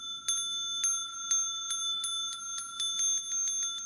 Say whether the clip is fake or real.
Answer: real